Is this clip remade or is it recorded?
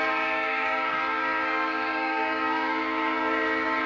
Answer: remade